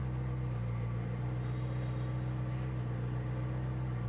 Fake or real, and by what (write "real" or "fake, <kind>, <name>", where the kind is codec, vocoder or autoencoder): real